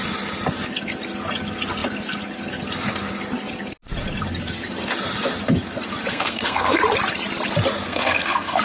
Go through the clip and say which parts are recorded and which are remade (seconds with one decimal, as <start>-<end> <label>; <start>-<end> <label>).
0.0-6.1 recorded; 6.1-6.8 remade; 6.8-7.8 recorded; 7.8-8.6 remade

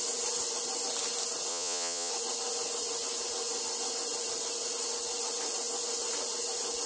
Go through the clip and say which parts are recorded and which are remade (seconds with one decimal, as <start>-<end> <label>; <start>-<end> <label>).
0.0-1.5 recorded; 1.5-2.1 remade; 2.1-6.9 recorded

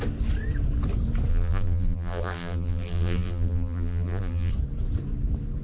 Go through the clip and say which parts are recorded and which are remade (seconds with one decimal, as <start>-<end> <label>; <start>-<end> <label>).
0.0-1.3 recorded; 1.3-4.5 remade; 4.5-5.6 recorded

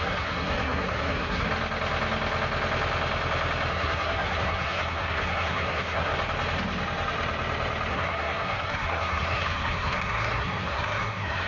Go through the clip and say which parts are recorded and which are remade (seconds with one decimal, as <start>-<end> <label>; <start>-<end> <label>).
0.0-1.5 remade; 1.5-3.7 recorded; 3.7-6.1 remade; 6.1-7.9 recorded; 7.9-11.5 remade

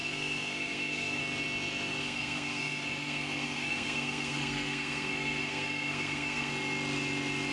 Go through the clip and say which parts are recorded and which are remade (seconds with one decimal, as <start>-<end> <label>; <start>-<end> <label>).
0.0-1.2 remade; 1.2-2.0 recorded; 2.0-6.5 remade; 6.5-7.5 recorded

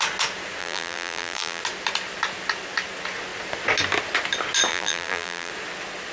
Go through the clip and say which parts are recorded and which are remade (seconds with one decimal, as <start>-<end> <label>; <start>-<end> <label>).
0.0-0.6 recorded; 0.6-1.6 remade; 1.6-4.7 recorded; 4.7-5.5 remade; 5.5-6.1 recorded

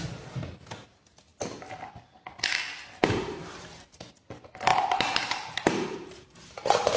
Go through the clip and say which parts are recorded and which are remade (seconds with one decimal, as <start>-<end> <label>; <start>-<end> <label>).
0.0-3.0 recorded; 3.0-4.0 remade; 4.0-4.7 recorded; 4.7-7.0 remade